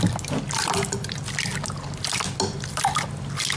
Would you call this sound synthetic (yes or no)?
no